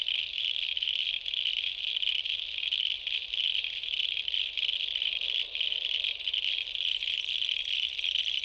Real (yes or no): yes